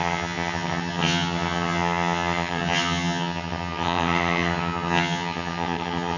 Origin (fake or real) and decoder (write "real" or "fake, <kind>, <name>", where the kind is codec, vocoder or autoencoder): fake, vocoder, HiFi-GAN